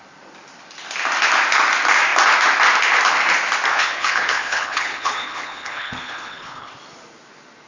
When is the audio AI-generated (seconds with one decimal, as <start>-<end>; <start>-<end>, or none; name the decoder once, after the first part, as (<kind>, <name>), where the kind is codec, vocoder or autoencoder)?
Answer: 3.7-6.7 (codec, HILCodec)